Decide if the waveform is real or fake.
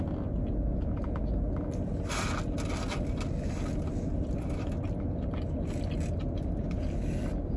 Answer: real